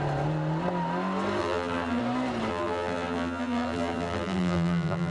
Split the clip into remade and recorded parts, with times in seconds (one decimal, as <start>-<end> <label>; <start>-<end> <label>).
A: 0.0-1.4 recorded; 1.4-2.0 remade; 2.0-2.5 recorded; 2.5-5.1 remade